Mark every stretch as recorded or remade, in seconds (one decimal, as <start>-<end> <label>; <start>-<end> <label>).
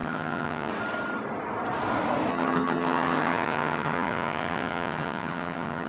0.0-0.7 remade; 0.7-2.3 recorded; 2.3-5.9 remade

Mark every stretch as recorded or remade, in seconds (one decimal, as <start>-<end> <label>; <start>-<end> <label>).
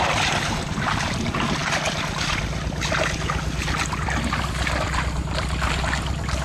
0.0-6.4 recorded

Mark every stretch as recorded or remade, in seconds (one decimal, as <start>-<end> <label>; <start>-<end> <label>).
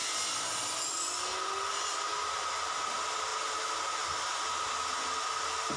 0.0-5.8 recorded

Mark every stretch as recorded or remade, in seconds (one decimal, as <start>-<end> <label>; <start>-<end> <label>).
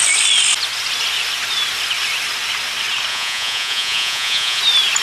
0.0-3.1 recorded; 3.1-4.6 remade; 4.6-5.0 recorded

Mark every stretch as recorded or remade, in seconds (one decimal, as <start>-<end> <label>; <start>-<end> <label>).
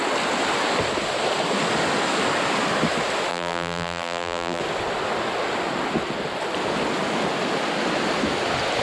0.0-3.3 recorded; 3.3-4.6 remade; 4.6-8.8 recorded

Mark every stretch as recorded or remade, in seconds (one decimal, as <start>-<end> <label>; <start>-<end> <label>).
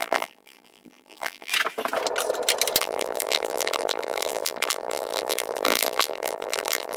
0.0-1.5 remade; 1.5-2.8 recorded; 2.8-7.0 remade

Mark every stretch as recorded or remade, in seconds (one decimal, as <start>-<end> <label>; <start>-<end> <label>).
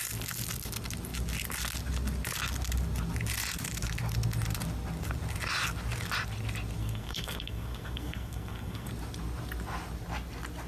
0.0-6.8 recorded; 6.8-8.9 remade; 8.9-10.7 recorded